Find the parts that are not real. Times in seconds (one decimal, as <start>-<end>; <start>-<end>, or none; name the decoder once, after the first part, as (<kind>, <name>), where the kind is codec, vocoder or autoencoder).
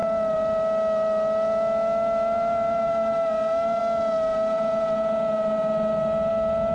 none